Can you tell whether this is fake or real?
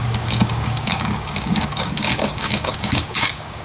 fake